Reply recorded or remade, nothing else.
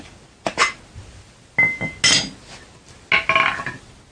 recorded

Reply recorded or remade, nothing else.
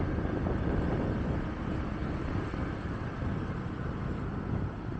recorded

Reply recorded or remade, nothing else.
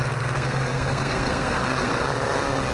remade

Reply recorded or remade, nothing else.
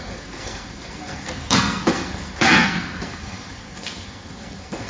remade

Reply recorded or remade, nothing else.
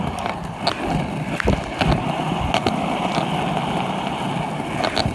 recorded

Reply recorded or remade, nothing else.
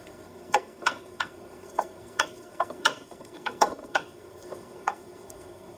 remade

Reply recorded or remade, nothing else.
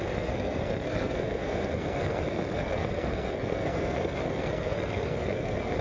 remade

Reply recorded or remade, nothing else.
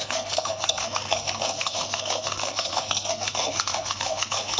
remade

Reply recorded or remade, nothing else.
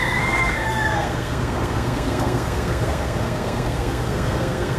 remade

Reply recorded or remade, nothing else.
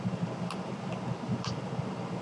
recorded